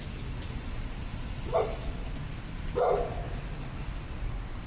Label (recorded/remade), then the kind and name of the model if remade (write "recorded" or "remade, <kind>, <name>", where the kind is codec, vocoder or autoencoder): recorded